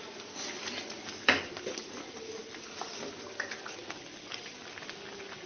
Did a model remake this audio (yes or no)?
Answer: no